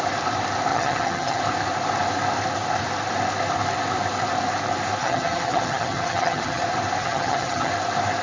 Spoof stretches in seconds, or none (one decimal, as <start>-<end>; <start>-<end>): 0.7-1.4; 5.0-6.6; 7.0-7.7